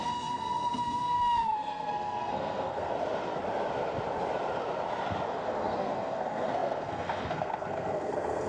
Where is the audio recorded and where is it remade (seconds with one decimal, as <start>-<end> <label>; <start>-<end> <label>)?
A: 0.0-2.9 remade; 2.9-5.3 recorded; 5.3-8.5 remade